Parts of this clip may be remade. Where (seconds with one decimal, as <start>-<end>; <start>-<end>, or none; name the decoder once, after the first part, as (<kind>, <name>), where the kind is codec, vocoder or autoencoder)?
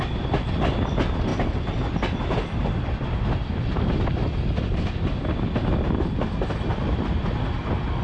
none